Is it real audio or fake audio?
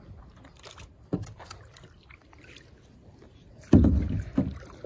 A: real